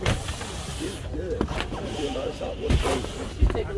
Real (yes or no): yes